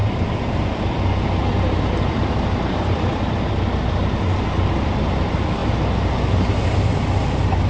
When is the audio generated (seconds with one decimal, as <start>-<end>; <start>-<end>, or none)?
0.0-4.0; 4.8-5.6